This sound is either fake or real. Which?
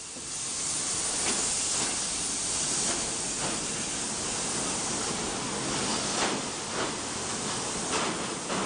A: real